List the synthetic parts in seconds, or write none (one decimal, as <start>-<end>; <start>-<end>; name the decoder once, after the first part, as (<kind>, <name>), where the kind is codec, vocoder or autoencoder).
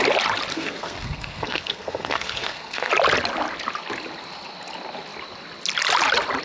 0.5-2.9 (codec, SNAC)